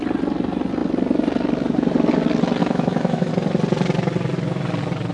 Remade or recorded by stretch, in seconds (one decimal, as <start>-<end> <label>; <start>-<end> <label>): 0.0-2.6 recorded; 2.6-3.3 remade; 3.3-5.1 recorded